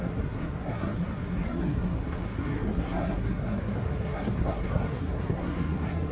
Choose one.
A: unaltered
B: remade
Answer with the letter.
B